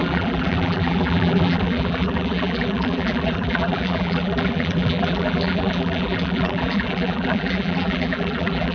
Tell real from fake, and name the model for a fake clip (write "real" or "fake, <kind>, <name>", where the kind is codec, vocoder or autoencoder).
fake, vocoder, BigVGAN v2